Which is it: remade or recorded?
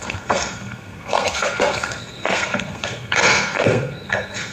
remade